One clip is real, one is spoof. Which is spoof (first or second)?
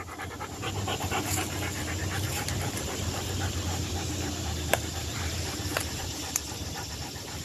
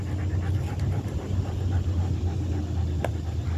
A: first